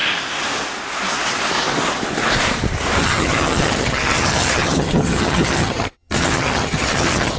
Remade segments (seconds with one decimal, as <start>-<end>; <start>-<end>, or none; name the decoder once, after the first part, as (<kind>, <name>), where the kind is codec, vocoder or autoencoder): 3.0-7.4 (vocoder, HiFi-GAN)